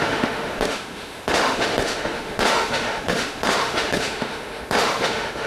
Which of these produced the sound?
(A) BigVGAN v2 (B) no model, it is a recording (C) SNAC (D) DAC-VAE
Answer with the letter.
D